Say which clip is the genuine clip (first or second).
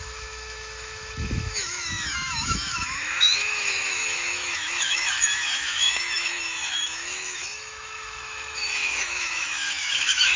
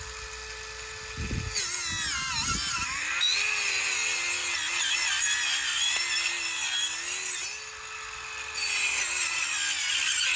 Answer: second